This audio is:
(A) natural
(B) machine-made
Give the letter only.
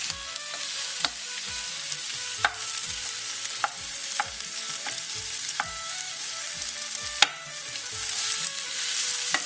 A